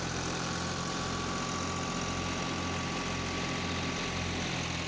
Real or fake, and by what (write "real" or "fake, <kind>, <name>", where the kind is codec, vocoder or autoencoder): real